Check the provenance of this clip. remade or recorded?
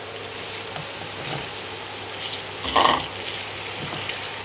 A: recorded